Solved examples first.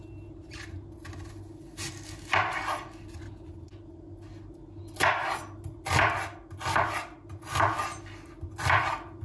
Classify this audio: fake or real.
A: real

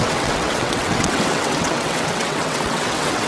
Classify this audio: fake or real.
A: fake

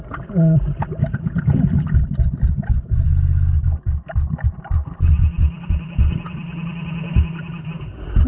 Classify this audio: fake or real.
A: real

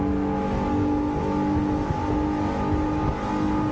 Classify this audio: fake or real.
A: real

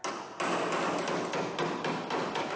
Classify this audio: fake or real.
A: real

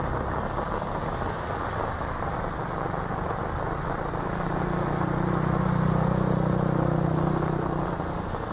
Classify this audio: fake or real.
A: real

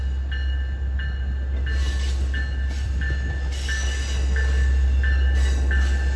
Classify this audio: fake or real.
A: real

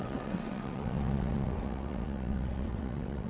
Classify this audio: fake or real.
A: fake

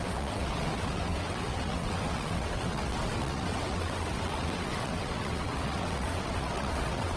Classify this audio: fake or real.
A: fake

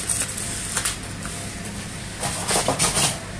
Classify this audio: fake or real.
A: real